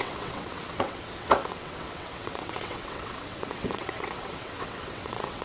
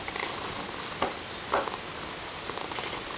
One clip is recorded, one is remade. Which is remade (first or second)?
first